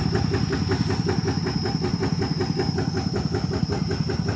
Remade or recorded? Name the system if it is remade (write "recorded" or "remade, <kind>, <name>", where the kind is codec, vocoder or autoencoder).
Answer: recorded